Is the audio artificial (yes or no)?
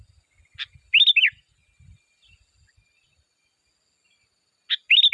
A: no